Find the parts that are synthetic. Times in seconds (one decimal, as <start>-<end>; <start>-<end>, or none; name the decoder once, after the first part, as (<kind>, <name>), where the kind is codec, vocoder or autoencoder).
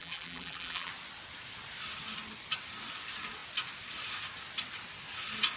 0.0-0.9 (vocoder, BigVGAN v2)